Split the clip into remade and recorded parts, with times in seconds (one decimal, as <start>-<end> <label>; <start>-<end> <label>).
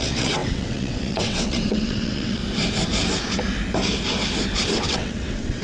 0.0-2.4 remade; 2.4-4.8 recorded; 4.8-5.6 remade